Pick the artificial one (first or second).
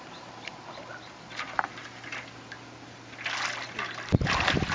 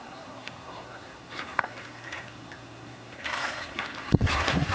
second